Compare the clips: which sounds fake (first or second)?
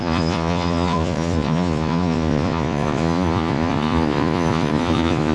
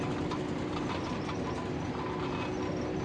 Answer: first